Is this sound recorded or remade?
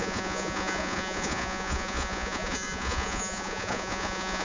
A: remade